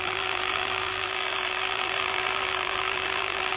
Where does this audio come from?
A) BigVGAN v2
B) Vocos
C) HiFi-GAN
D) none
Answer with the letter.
A